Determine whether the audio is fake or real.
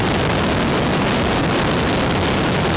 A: real